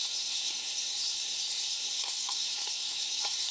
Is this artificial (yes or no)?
yes